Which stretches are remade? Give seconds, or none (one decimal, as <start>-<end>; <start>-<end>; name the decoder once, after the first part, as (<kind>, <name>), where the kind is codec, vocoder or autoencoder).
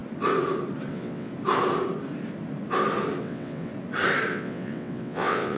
0.9-1.3 (vocoder, WaveNeXt); 3.2-3.7; 4.3-5.6